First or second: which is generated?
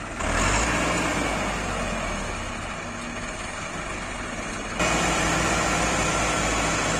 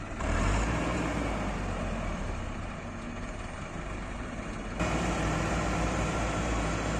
second